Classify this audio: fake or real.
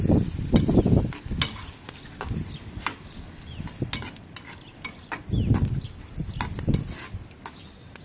real